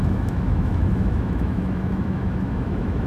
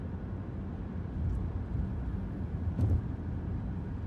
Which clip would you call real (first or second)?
second